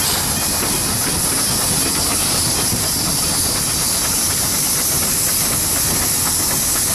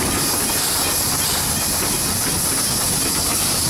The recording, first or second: first